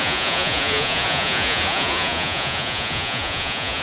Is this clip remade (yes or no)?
yes